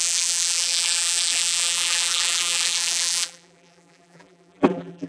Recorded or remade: remade